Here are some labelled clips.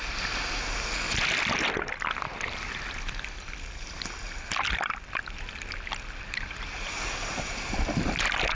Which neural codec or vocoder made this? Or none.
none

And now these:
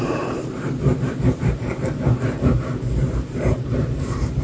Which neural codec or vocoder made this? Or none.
vocoder, BigVGAN v2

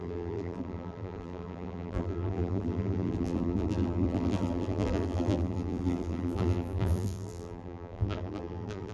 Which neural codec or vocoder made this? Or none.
vocoder, BigVGAN v2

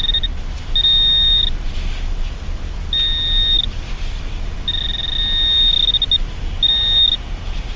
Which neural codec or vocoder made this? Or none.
none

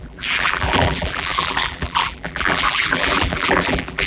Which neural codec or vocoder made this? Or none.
vocoder, BigVGAN v2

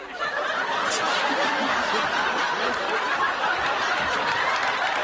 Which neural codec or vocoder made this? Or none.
none